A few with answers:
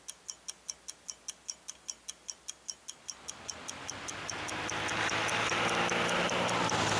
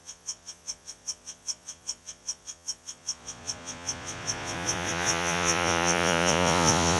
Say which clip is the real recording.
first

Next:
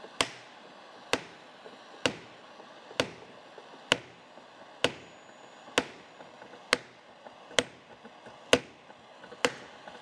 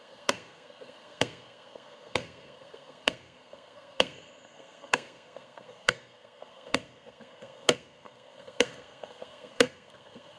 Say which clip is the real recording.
first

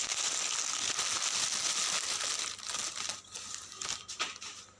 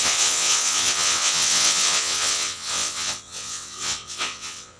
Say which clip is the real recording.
first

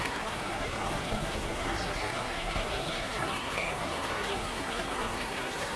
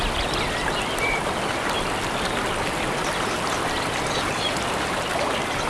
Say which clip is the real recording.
second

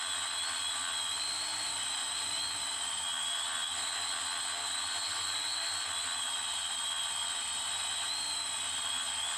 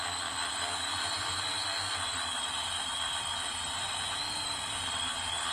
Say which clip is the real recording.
first